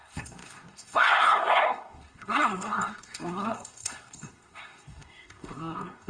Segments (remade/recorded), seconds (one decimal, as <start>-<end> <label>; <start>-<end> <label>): 0.0-6.1 remade